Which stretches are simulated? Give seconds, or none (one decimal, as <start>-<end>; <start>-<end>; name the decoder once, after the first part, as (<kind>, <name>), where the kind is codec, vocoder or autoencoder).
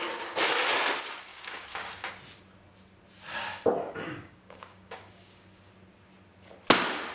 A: 1.3-2.1 (codec, DAC); 3.8-5.7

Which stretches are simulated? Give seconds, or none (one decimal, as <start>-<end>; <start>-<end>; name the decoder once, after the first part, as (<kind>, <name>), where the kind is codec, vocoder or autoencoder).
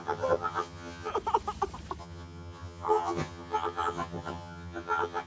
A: 0.0-1.1 (vocoder, HiFi-GAN); 2.0-5.3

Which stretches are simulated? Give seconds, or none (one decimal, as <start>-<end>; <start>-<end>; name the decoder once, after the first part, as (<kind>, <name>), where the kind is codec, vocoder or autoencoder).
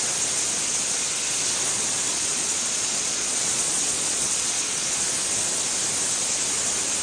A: 2.1-5.1 (vocoder, Vocos)